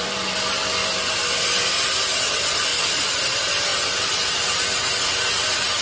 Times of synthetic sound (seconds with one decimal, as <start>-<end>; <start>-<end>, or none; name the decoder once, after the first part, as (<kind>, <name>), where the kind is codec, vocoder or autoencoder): 0.0-0.8 (vocoder, BigVGAN v2); 2.2-5.8